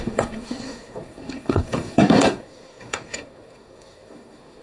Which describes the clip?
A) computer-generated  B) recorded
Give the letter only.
A